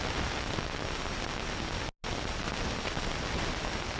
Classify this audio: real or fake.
real